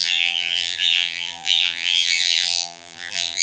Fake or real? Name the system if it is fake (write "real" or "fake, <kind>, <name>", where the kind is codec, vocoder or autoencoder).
fake, vocoder, BigVGAN v2